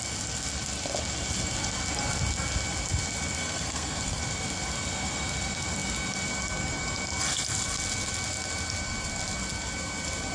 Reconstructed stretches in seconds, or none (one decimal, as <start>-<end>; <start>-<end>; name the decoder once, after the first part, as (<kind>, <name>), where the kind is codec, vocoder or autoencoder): 3.4-4.2 (codec, SNAC)